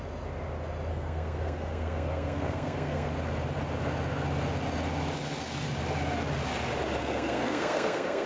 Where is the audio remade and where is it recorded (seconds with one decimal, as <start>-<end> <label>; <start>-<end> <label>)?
0.0-0.9 recorded; 0.9-3.1 remade; 3.1-7.0 recorded; 7.0-8.3 remade